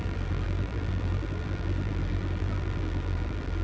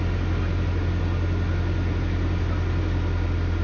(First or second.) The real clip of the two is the second